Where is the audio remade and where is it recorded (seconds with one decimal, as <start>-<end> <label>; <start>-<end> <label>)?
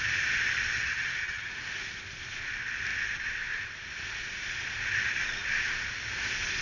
0.0-0.7 recorded; 0.7-1.5 remade; 1.5-6.6 recorded